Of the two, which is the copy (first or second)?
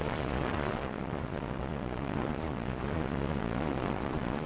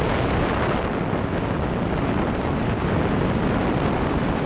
first